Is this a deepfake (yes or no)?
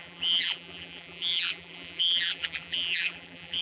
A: yes